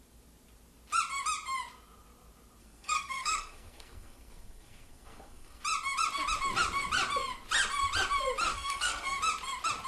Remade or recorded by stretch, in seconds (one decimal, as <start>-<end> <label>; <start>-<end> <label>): 0.0-2.6 recorded; 2.6-5.6 remade; 5.6-8.5 recorded; 8.5-9.2 remade; 9.2-9.9 recorded